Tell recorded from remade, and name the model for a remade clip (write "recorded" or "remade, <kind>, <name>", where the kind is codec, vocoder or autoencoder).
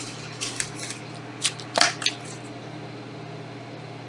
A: recorded